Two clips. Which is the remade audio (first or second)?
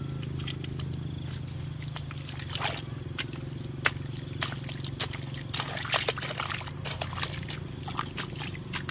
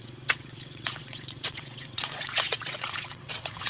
second